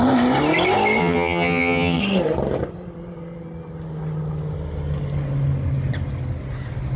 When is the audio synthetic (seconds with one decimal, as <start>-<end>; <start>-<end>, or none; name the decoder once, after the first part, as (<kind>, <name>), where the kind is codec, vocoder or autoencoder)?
1.0-2.0 (vocoder, HiFi-GAN)